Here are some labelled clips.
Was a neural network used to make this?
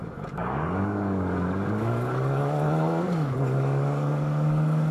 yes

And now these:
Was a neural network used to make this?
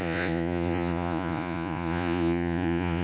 yes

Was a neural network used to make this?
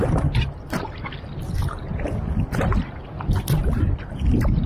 no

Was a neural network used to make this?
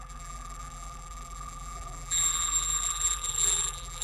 yes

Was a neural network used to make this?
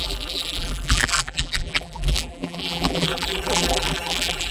yes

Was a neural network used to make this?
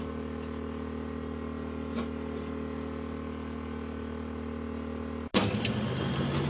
no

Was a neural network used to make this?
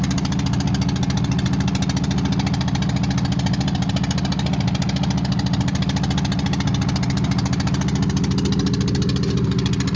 no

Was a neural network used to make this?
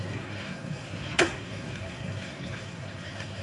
yes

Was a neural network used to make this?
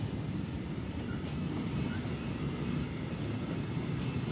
no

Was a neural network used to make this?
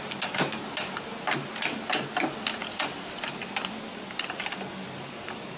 no